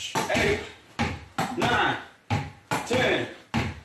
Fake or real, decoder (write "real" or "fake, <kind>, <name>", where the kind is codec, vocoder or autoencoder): real